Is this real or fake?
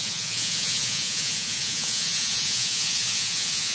fake